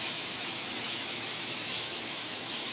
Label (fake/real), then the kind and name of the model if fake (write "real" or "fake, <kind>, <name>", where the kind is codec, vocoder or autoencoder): fake, autoencoder, DAC-VAE